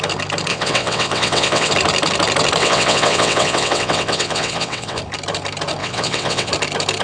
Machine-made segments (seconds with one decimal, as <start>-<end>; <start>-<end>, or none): 0.5-1.7; 2.6-5.0; 5.8-6.5